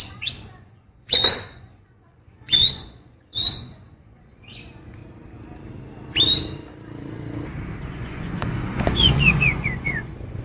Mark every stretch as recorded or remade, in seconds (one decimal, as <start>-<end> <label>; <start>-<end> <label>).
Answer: 0.0-5.0 remade; 5.0-7.9 recorded; 7.9-10.4 remade